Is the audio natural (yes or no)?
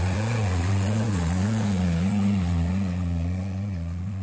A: no